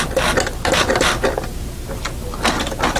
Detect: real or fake real